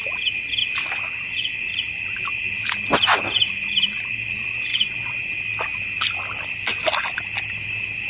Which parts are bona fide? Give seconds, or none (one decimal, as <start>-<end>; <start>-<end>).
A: 0.0-8.1

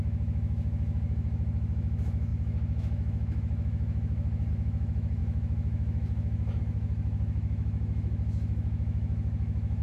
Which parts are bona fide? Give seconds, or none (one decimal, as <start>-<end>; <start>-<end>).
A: none

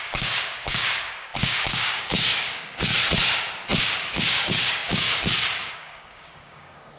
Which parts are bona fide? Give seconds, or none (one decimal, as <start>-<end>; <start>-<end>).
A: 2.9-3.8

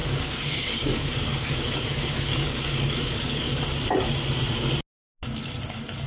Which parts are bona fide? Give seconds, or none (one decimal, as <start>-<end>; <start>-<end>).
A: 3.6-6.1

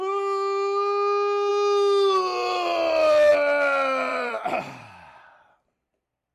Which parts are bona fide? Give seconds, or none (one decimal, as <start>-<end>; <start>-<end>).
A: 0.0-4.1; 5.2-6.3

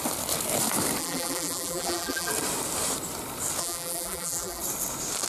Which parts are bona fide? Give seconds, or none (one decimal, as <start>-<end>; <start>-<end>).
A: 0.0-1.0; 2.3-3.6; 4.6-5.3

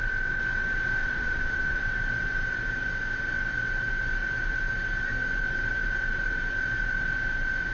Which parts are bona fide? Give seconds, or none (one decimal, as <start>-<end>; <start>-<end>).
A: 0.0-1.0; 1.8-7.7

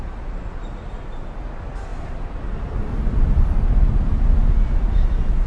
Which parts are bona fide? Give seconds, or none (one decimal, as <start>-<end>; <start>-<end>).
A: 0.0-1.9; 3.5-5.5